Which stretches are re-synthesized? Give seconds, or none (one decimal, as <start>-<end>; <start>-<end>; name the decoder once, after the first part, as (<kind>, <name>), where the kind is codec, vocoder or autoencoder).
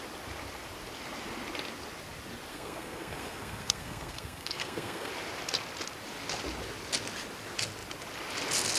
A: 2.5-5.1 (codec, SNAC)